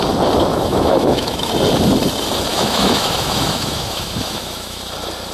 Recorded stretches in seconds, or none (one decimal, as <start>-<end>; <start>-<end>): 0.0-0.5; 1.5-2.5; 4.8-5.3